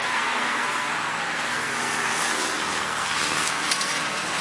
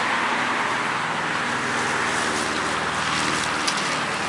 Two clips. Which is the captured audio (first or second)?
second